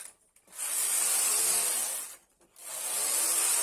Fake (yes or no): no